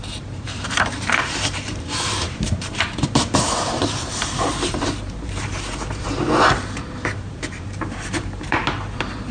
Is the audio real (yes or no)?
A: no